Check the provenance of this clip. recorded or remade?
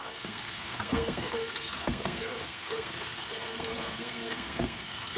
remade